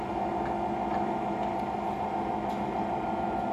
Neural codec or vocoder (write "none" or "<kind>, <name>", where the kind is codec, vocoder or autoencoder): none